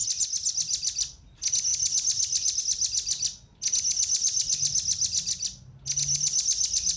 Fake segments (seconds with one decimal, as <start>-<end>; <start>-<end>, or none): none